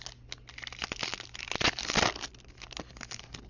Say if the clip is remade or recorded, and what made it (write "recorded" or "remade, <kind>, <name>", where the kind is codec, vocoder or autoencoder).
recorded